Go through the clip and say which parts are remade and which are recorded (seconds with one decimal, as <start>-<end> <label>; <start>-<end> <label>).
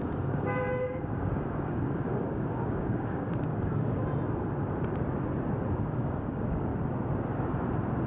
0.0-4.0 remade; 4.0-5.7 recorded; 5.7-6.7 remade; 6.7-8.1 recorded